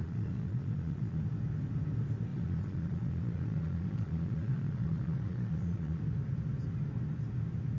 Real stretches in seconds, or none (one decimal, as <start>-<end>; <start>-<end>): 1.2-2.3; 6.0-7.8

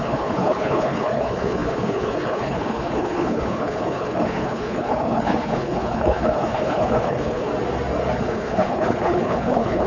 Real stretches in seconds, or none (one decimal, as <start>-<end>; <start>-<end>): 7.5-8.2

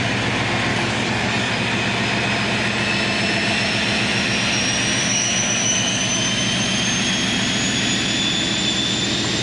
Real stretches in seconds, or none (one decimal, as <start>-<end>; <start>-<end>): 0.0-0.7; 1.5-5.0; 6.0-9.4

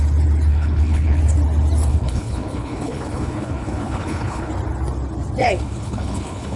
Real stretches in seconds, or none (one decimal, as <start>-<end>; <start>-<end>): 0.0-0.5; 1.2-1.9; 4.5-5.4